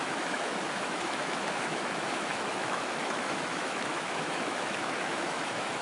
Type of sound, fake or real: fake